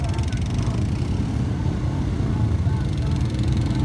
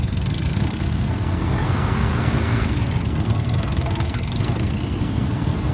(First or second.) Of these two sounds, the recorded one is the first